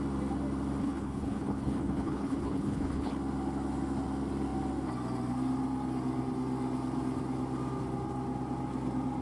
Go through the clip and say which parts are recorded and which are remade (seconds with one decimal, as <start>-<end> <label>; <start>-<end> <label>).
0.0-0.8 recorded; 0.8-3.1 remade; 3.1-9.2 recorded